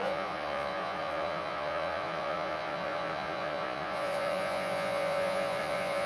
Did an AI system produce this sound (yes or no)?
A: yes